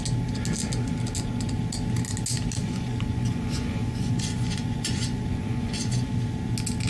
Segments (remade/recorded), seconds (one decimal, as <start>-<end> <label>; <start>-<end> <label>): 0.0-2.6 recorded; 2.6-6.1 remade; 6.1-6.9 recorded